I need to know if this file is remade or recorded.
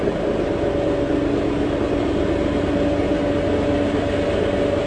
recorded